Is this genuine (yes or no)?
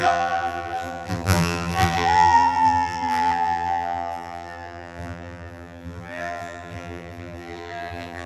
no